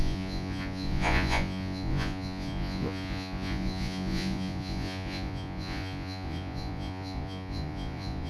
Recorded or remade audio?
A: remade